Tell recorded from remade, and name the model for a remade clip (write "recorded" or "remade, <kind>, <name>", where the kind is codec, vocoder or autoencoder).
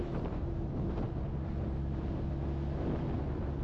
recorded